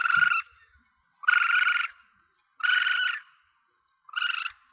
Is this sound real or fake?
real